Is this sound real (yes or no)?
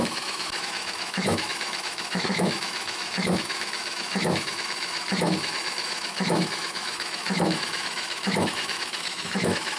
no